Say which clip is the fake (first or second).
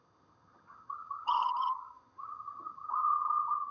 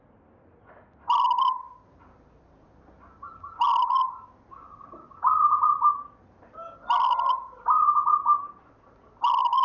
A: first